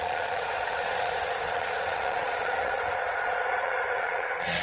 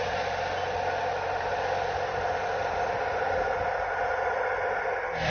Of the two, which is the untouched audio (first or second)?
second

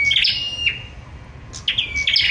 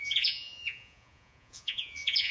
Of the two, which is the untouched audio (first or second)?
first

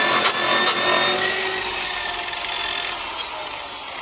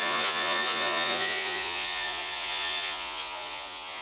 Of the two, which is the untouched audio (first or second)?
first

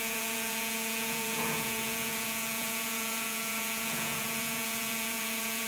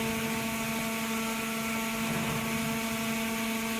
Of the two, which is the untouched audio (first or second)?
second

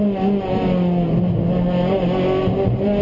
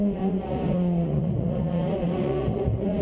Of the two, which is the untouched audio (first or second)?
first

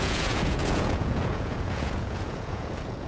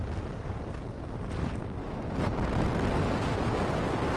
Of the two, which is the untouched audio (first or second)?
second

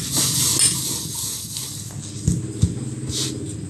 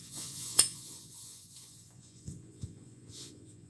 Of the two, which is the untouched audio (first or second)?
first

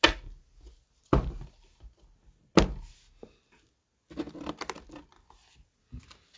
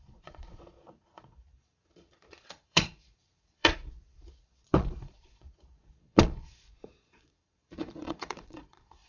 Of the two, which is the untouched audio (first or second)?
first